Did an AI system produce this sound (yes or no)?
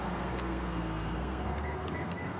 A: yes